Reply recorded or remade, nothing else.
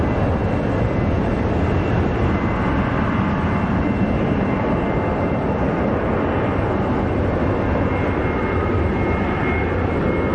recorded